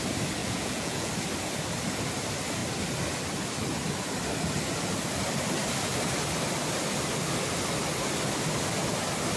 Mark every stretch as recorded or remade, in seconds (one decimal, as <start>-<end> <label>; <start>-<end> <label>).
0.0-0.4 recorded; 0.4-1.1 remade; 1.1-9.4 recorded